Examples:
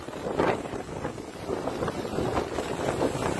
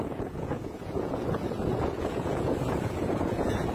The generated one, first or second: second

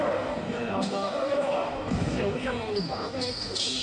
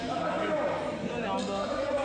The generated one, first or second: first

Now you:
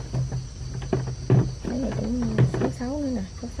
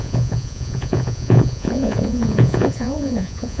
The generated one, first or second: second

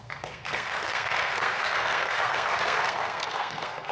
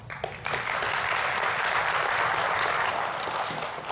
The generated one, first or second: first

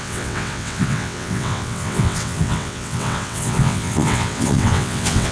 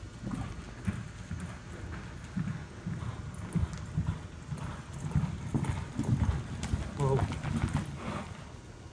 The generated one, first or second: first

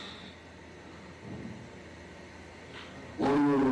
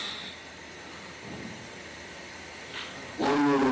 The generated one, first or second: second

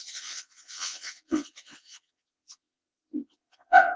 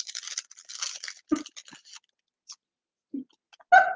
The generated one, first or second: first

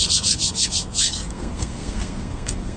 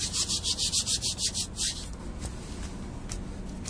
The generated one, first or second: first